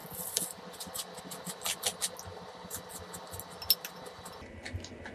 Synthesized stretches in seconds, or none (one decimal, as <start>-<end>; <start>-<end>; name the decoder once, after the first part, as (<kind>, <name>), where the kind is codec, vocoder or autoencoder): 0.0-1.2 (vocoder, BigVGAN v2)